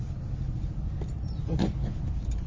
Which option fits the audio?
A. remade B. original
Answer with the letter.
B